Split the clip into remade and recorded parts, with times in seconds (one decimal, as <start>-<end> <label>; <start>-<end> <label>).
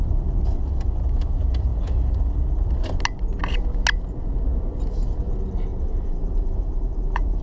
0.0-5.7 recorded; 5.7-7.4 remade